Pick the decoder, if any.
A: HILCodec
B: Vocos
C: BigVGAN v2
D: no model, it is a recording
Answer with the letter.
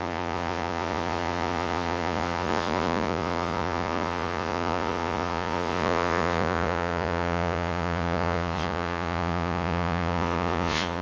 B